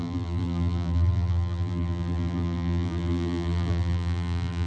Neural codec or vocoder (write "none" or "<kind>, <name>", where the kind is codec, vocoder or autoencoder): vocoder, BigVGAN v2